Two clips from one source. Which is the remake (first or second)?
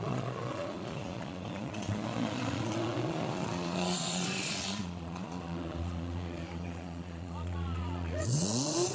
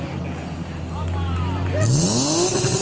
first